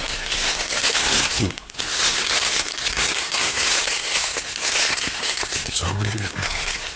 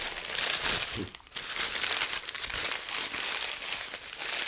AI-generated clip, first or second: first